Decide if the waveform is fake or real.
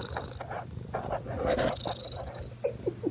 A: real